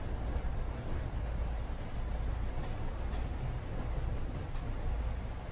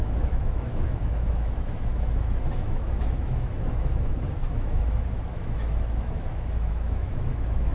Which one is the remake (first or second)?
second